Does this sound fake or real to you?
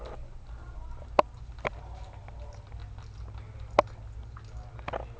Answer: real